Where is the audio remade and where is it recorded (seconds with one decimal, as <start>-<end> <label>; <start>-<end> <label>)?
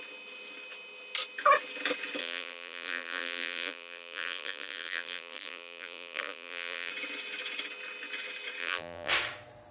0.0-2.2 recorded; 2.2-6.9 remade; 6.9-8.6 recorded; 8.6-9.1 remade; 9.1-9.7 recorded